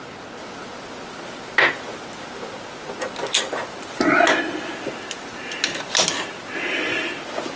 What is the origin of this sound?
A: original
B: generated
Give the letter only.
A